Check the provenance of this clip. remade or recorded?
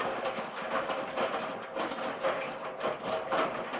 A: recorded